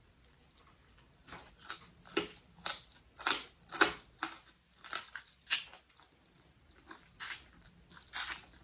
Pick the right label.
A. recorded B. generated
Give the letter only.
A